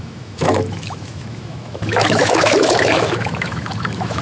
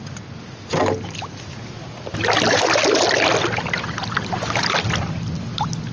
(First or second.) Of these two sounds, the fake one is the first